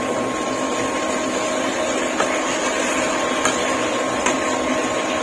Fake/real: real